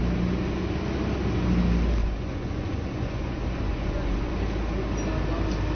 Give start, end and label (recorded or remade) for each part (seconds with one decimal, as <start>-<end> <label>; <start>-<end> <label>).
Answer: 0.0-2.0 recorded; 2.0-4.3 remade; 4.3-5.7 recorded